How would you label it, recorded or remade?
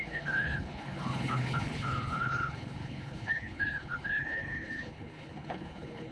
remade